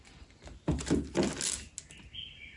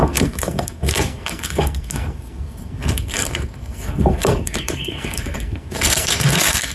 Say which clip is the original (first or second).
first